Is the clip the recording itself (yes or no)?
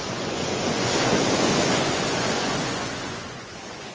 no